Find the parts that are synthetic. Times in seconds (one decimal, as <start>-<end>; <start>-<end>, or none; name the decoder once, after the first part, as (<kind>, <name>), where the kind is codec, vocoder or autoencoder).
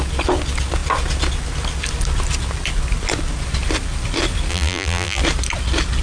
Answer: 4.5-5.2 (vocoder, BigVGAN v2)